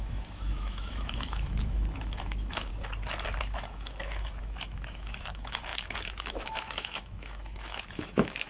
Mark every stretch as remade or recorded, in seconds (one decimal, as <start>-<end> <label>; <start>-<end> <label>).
0.0-2.7 remade; 2.7-3.4 recorded; 3.4-8.5 remade